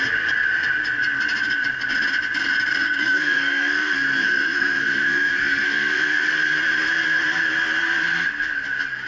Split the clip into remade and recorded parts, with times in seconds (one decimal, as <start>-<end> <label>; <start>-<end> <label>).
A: 0.0-2.7 recorded; 2.7-6.3 remade; 6.3-9.1 recorded